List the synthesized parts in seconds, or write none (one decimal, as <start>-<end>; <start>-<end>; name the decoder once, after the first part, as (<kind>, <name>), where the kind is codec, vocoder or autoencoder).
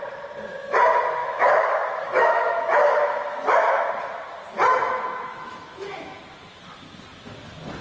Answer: 1.2-3.9 (autoencoder, DAC-VAE); 5.3-6.2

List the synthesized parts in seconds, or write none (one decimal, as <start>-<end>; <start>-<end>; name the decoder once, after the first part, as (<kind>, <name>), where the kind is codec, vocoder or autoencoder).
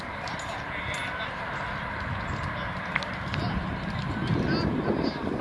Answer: none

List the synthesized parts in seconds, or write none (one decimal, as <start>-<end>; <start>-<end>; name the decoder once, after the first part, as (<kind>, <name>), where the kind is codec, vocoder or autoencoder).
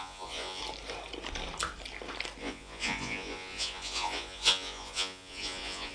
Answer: 0.0-0.6 (vocoder, Vocos); 2.4-5.9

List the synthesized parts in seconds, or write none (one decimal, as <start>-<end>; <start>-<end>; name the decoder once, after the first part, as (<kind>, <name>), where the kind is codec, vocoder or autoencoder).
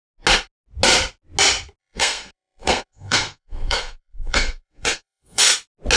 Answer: 1.8-5.4 (codec, SNAC)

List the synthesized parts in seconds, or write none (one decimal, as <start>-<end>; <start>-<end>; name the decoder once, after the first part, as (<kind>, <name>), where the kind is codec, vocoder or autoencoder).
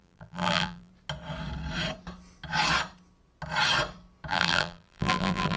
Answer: 0.0-0.9 (vocoder, BigVGAN v2); 4.3-5.6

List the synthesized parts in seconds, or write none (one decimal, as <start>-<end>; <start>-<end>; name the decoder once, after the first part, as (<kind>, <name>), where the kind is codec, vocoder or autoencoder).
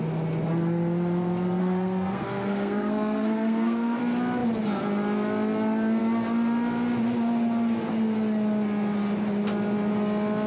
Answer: 1.6-4.0 (codec, SNAC)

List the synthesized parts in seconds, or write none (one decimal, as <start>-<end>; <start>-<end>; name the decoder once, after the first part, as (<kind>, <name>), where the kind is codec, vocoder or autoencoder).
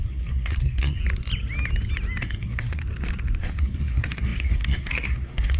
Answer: 0.0-1.0 (codec, SNAC); 2.2-2.8; 3.4-5.6